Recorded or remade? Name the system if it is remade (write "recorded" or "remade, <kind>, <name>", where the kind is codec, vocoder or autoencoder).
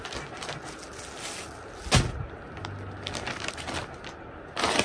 recorded